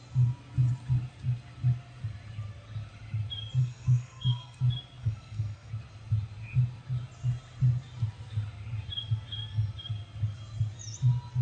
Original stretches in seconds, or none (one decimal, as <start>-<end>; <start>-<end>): 0.0-3.6; 4.6-5.0; 5.7-11.4